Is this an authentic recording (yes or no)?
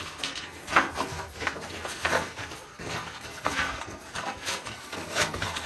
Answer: no